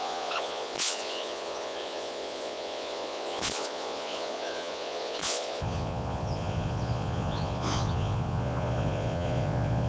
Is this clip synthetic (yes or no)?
yes